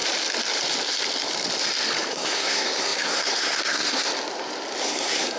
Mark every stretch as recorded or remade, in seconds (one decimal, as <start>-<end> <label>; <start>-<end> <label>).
0.0-2.1 recorded; 2.1-4.1 remade; 4.1-4.8 recorded; 4.8-5.4 remade